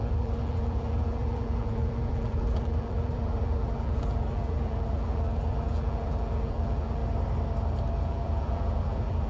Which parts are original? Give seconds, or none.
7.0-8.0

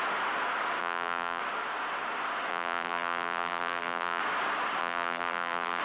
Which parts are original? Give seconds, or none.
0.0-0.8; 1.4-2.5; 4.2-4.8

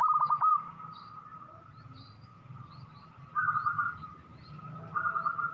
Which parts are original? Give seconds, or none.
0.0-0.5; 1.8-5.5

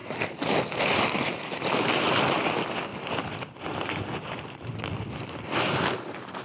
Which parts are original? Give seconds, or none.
0.6-2.9; 5.6-6.4

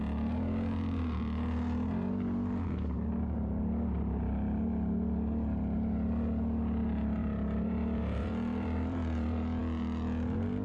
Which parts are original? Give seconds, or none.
0.0-7.2; 9.6-10.6

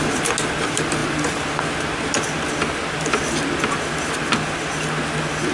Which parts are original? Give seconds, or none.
0.0-5.5